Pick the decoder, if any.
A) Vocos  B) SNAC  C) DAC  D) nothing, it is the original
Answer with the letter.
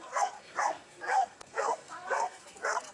B